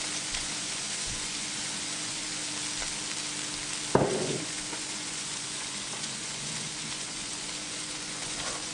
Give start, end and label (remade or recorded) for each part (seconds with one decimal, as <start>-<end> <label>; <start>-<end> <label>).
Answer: 0.0-2.4 remade; 2.4-4.0 recorded; 4.0-8.7 remade